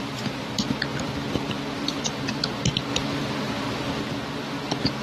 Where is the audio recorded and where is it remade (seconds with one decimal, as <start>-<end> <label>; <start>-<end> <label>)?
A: 0.0-5.0 remade